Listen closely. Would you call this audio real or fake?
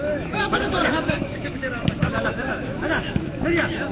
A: fake